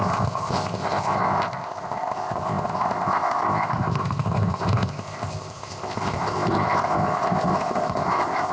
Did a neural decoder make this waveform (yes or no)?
yes